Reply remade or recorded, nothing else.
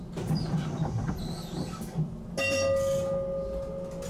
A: recorded